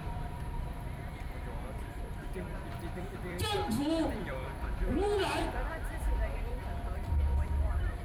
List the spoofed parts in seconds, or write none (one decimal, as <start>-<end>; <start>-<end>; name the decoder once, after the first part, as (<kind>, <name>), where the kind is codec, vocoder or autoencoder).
0.0-8.0 (vocoder, BigVGAN v2)